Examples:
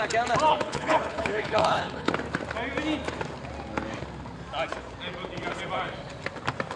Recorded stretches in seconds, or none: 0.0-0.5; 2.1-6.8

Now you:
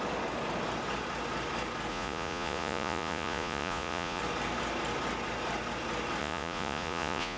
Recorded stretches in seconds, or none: 0.0-1.9; 4.2-6.2

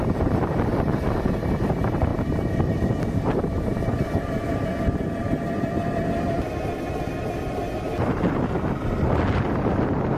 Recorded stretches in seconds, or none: 2.1-3.0; 4.5-9.3

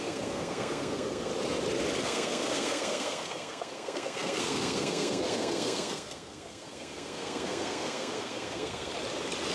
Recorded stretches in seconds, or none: 1.3-2.0; 8.9-9.5

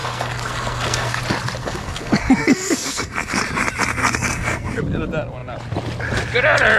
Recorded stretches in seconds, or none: 1.2-1.6; 3.4-4.0; 4.8-6.8

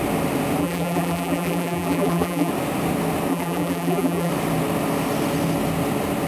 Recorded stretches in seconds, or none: 0.0-0.6; 2.5-3.3; 4.3-6.3

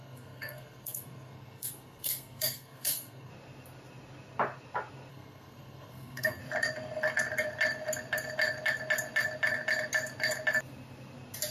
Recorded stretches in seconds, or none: 3.3-5.1; 6.4-11.5